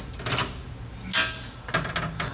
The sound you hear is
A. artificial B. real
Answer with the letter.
B